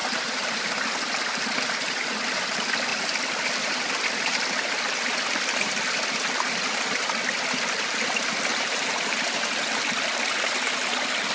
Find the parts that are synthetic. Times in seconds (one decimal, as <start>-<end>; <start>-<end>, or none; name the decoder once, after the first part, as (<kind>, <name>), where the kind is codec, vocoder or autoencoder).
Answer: 0.0-0.6 (vocoder, BigVGAN v2); 8.5-9.5